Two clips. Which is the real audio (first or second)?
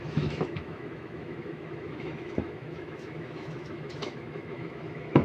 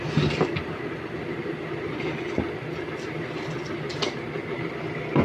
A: second